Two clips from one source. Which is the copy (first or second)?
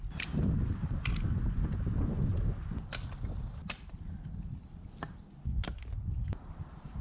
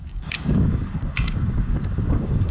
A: second